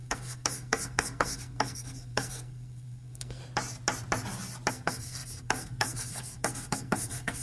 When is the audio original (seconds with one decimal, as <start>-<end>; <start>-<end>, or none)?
3.4-4.7